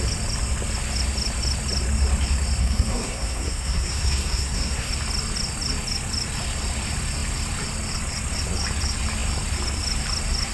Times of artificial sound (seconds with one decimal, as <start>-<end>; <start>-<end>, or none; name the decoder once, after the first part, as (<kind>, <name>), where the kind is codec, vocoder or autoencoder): 2.6-4.9 (codec, SNAC)